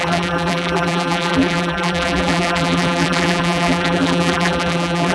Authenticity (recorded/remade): remade